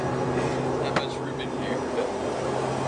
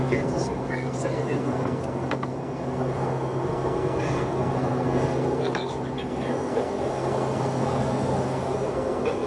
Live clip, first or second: first